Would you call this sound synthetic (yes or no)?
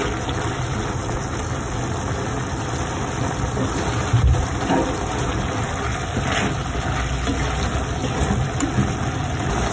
no